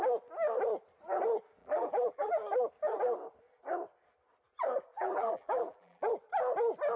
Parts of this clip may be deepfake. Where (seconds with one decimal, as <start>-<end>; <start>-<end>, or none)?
1.6-2.3; 4.9-6.1